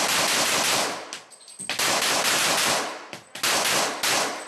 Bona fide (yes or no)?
yes